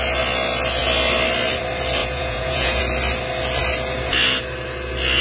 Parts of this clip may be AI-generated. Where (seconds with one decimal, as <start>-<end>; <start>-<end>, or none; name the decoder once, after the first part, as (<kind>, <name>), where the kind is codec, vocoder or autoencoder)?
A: 2.0-2.8 (vocoder, Vocos)